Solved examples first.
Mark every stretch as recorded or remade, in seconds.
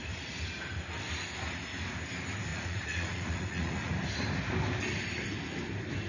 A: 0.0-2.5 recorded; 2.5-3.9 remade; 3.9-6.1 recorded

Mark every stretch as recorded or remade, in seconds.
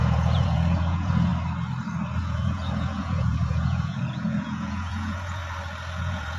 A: 0.0-1.3 remade; 1.3-2.2 recorded; 2.2-5.4 remade; 5.4-6.0 recorded; 6.0-6.4 remade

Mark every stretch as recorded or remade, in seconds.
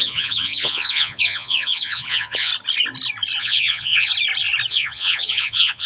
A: 0.0-2.5 remade; 2.5-3.4 recorded; 3.4-4.1 remade; 4.1-4.7 recorded; 4.7-5.9 remade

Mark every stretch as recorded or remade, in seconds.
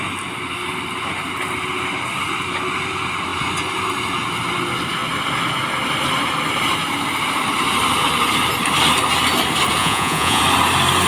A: 0.0-9.8 recorded; 9.8-10.4 remade; 10.4-11.1 recorded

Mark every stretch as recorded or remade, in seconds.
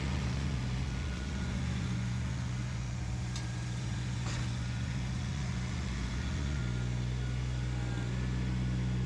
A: 0.0-6.6 remade; 6.6-9.1 recorded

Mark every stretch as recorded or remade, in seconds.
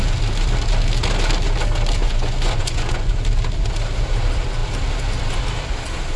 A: 0.0-2.0 recorded; 2.0-3.1 remade; 3.1-6.2 recorded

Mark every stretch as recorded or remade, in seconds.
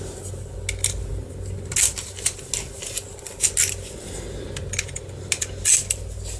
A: 0.0-6.4 recorded